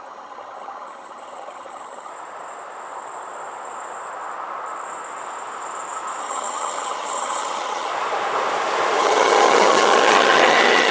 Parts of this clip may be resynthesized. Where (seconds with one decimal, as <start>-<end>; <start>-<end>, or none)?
0.0-2.1; 6.2-7.9; 9.0-10.9